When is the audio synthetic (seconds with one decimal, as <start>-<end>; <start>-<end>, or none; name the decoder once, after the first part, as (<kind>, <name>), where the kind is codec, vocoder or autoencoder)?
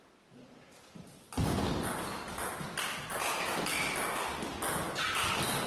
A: none